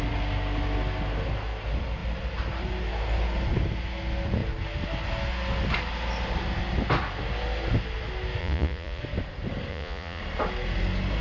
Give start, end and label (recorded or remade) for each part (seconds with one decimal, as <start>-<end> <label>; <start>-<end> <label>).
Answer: 0.0-8.4 recorded; 8.4-9.0 remade; 9.0-9.7 recorded; 9.7-10.2 remade; 10.2-11.2 recorded